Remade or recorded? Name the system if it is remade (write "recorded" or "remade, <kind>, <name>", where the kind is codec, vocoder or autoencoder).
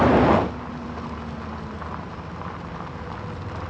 recorded